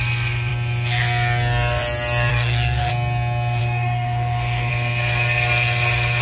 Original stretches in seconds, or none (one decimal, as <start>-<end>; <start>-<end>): 0.0-2.3; 2.9-3.6; 4.7-6.2